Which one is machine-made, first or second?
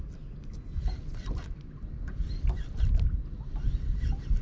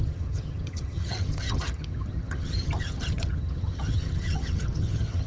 second